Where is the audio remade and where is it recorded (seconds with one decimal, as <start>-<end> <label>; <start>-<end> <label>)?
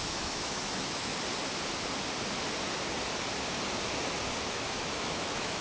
0.0-1.1 remade; 1.1-4.5 recorded; 4.5-5.6 remade